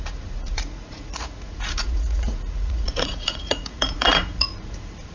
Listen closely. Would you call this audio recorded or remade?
remade